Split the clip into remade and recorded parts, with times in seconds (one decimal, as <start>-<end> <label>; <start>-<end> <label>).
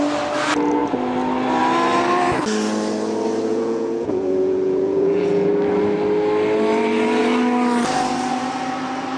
0.0-3.5 recorded; 3.5-5.5 remade; 5.5-9.2 recorded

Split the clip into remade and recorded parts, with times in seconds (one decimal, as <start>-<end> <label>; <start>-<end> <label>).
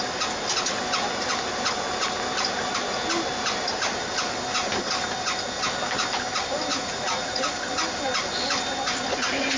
0.0-6.7 recorded; 6.7-7.5 remade; 7.5-9.6 recorded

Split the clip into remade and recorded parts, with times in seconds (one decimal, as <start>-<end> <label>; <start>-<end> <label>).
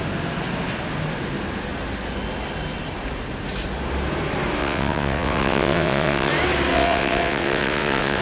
0.0-4.6 recorded; 4.6-6.3 remade; 6.3-6.7 recorded; 6.7-8.2 remade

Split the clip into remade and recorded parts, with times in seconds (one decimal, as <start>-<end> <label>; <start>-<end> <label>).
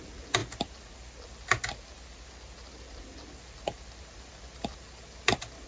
0.0-5.7 recorded